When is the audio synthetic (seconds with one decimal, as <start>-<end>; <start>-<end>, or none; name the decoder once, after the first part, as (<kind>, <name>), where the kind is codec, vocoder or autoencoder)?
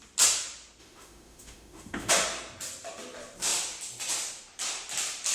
0.8-2.1 (autoencoder, DAC-VAE)